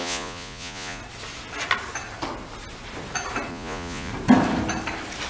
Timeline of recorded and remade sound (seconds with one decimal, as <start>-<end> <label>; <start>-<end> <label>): 0.0-1.0 remade; 1.0-3.5 recorded; 3.5-4.1 remade; 4.1-5.3 recorded